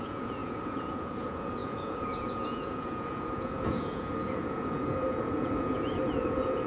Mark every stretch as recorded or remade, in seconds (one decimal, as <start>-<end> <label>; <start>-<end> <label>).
0.0-6.7 remade